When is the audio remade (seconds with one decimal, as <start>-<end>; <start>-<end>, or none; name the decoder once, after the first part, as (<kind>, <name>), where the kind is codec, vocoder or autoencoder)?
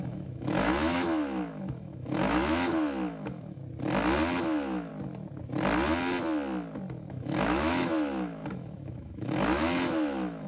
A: 0.0-3.6 (autoencoder, DAC-VAE); 4.4-4.9; 7.1-10.5